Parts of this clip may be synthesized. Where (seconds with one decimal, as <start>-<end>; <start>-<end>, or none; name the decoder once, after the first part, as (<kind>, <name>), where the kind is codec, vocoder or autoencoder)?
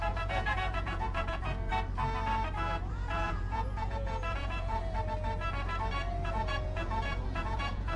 0.0-1.7 (vocoder, Vocos); 2.9-4.8; 6.3-8.0